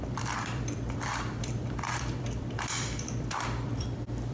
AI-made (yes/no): yes